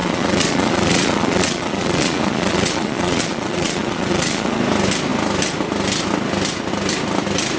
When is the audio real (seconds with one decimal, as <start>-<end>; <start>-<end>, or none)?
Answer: 4.6-7.6